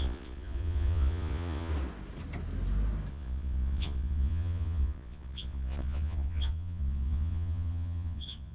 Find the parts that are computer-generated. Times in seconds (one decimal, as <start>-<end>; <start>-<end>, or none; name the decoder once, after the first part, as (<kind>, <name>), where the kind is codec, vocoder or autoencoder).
0.0-1.7 (vocoder, Vocos); 3.1-8.5